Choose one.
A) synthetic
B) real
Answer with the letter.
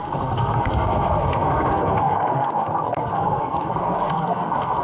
A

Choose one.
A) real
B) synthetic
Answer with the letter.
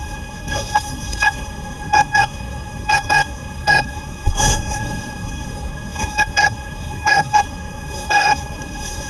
B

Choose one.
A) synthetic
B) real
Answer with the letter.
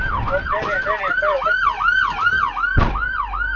B